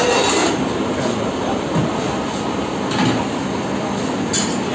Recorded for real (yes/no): yes